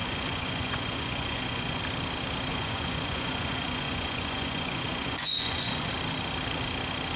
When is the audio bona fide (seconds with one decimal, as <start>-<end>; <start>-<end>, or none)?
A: 1.8-2.5; 5.9-7.2